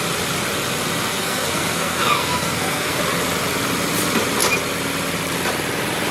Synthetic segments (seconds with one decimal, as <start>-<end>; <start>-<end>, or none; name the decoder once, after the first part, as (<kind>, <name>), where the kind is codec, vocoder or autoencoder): 1.1-3.0 (codec, SNAC)